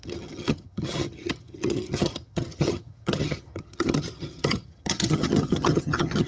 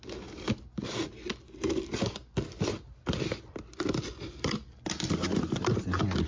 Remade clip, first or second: first